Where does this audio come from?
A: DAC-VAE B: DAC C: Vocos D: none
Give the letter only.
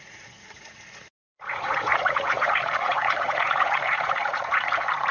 C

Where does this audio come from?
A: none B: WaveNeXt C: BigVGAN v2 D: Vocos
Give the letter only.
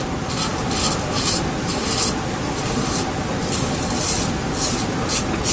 A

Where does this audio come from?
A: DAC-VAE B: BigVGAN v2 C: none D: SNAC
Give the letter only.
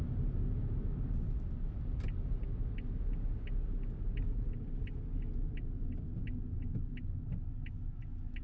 C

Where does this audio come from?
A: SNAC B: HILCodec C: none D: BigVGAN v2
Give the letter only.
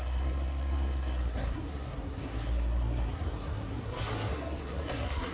A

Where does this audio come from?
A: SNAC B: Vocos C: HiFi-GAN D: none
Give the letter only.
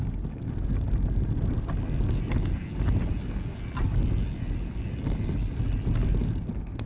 D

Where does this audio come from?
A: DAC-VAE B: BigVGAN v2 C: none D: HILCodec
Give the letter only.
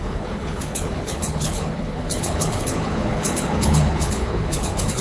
D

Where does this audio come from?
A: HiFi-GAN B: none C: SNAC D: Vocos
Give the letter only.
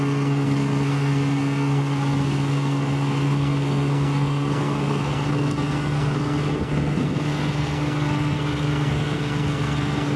C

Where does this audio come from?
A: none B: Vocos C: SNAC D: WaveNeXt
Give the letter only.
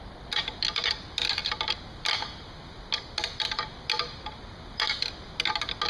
A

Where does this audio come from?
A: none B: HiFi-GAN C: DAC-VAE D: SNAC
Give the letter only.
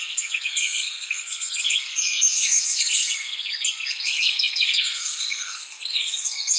D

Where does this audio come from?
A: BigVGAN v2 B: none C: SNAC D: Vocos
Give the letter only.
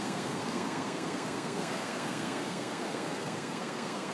C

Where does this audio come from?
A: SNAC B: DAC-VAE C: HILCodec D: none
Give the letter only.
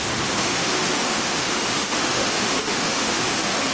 B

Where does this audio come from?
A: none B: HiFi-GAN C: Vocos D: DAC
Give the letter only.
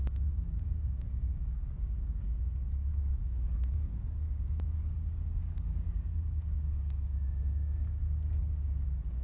D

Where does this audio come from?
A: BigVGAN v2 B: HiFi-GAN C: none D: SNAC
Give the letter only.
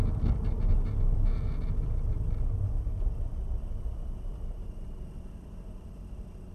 C